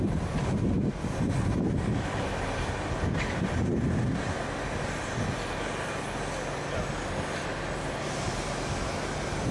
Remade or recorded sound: recorded